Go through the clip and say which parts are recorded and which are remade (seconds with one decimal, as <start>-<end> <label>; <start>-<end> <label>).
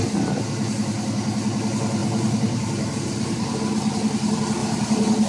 0.0-2.0 recorded; 2.0-3.6 remade; 3.6-4.6 recorded; 4.6-5.3 remade